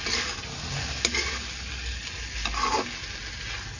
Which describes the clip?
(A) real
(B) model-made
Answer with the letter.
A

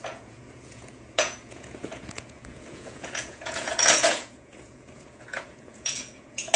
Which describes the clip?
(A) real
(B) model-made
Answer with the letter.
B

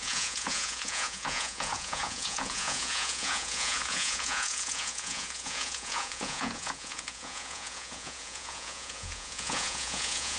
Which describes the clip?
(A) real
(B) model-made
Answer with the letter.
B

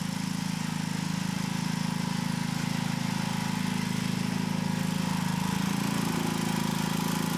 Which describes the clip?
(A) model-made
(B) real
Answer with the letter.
B